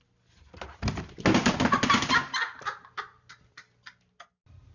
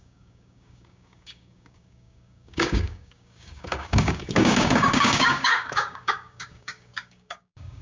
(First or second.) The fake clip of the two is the second